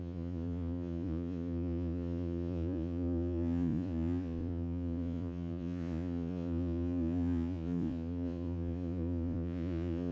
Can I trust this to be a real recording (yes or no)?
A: no